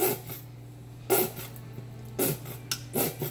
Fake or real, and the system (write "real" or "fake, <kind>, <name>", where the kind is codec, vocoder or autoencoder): real